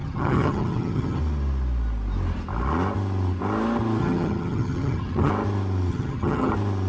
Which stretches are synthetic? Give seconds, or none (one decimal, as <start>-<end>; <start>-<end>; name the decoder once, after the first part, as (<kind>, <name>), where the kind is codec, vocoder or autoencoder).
0.0-1.2 (vocoder, HiFi-GAN); 4.0-5.3; 5.9-6.5